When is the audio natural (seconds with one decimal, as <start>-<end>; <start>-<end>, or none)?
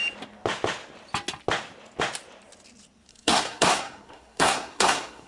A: 0.0-3.1